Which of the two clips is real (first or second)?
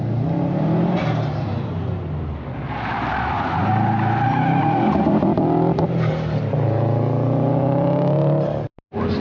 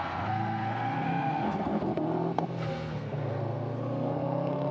first